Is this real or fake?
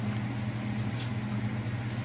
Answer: real